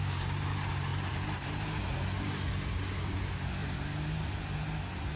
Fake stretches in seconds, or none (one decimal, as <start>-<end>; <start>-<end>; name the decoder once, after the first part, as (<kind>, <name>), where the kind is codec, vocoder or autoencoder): 0.9-1.5 (vocoder, BigVGAN v2); 3.6-4.4